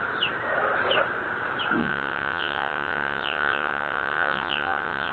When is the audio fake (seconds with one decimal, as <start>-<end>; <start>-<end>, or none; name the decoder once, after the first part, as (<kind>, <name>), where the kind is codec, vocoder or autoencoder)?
1.8-5.1 (vocoder, WaveNeXt)